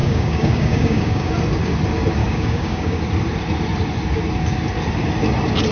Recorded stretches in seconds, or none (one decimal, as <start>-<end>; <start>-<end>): 1.3-2.2; 3.0-5.7

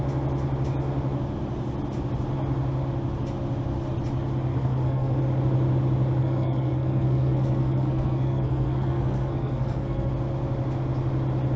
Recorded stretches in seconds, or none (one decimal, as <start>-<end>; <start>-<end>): 0.0-4.5; 5.2-6.2; 10.1-11.6

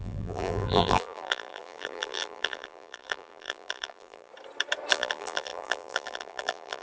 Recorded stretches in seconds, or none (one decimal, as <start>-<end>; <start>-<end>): 4.3-4.9

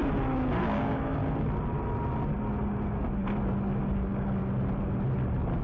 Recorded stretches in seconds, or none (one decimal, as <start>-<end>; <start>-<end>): 0.0-0.6; 1.2-3.9; 4.4-5.6

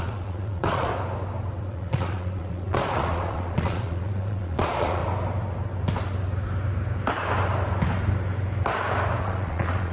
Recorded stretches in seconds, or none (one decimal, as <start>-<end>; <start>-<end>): 0.9-1.6; 5.0-9.2